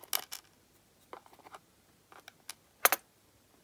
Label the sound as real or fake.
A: real